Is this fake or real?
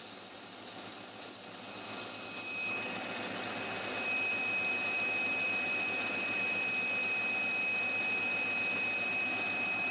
real